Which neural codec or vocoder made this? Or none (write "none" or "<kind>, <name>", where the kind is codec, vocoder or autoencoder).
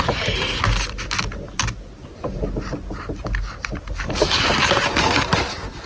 none